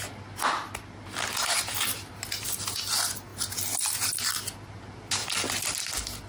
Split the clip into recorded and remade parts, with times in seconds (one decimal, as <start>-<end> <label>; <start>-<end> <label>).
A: 0.0-6.3 recorded